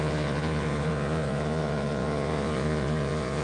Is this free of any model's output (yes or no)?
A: no